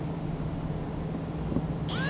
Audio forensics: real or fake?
real